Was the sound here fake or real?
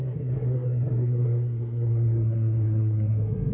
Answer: fake